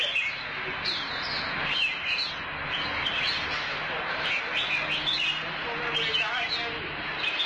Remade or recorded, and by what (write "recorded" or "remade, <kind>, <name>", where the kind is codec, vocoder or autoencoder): recorded